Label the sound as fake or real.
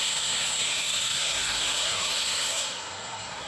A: fake